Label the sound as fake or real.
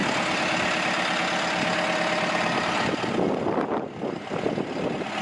real